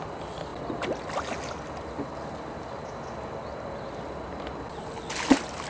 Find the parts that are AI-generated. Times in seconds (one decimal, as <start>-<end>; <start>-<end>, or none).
none

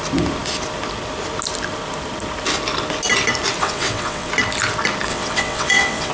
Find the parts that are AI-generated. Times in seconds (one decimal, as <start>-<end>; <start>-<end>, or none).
3.6-4.3; 5.1-6.1